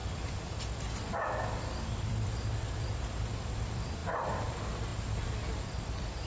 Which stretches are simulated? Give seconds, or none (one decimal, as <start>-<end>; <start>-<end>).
0.0-6.3